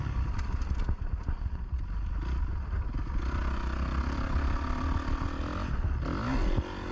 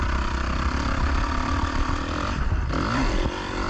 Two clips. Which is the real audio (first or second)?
first